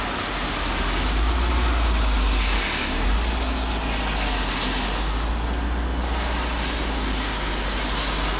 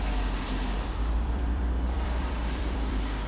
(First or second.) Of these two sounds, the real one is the first